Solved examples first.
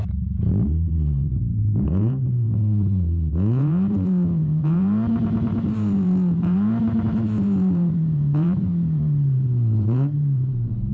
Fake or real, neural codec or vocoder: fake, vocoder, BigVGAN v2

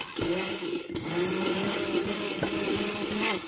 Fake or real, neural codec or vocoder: real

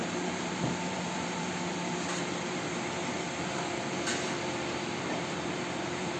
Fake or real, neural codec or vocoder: fake, vocoder, BigVGAN v2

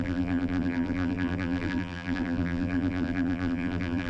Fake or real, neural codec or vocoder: fake, vocoder, BigVGAN v2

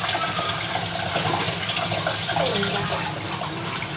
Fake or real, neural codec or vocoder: real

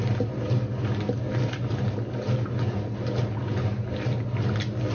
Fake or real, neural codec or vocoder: real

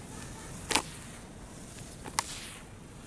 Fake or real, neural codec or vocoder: real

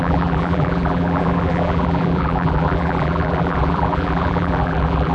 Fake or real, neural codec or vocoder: fake, vocoder, BigVGAN v2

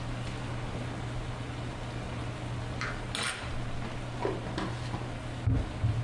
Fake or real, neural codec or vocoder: real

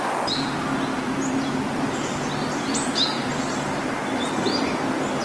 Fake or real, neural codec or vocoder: real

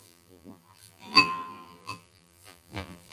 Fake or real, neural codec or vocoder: fake, vocoder, BigVGAN v2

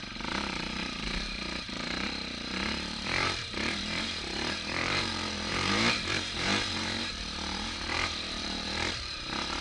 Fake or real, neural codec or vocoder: fake, vocoder, BigVGAN v2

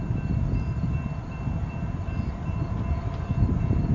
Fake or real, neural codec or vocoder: real